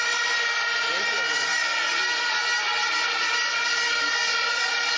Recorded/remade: recorded